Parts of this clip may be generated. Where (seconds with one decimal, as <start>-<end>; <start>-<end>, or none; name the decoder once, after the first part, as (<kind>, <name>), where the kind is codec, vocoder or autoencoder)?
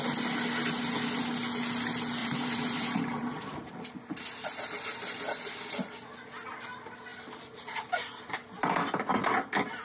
2.2-3.7 (vocoder, BigVGAN v2)